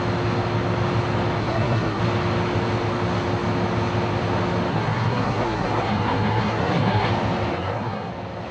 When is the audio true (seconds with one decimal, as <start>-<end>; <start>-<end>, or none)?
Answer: 0.0-1.4; 2.0-4.7; 7.1-7.5; 8.1-8.5